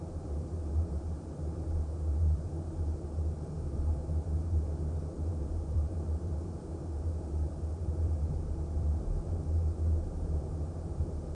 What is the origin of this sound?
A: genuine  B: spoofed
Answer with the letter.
B